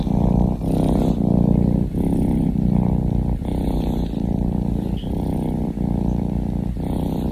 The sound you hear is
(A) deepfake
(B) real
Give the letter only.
B